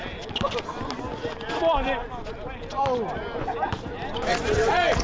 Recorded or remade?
recorded